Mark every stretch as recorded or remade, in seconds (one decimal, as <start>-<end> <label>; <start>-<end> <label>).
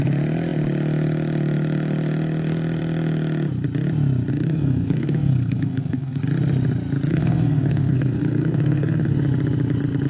0.0-4.3 recorded; 4.3-6.2 remade; 6.2-7.1 recorded; 7.1-9.2 remade; 9.2-10.1 recorded